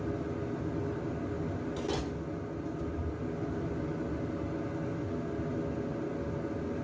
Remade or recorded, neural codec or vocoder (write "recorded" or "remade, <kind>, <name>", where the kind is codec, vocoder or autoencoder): recorded